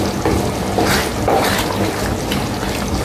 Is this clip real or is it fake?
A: fake